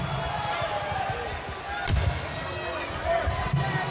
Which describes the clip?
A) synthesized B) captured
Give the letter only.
B